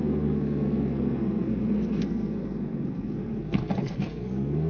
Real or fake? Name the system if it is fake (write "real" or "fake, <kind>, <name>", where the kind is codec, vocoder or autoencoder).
fake, codec, SNAC